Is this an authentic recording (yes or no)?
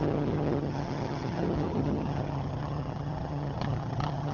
no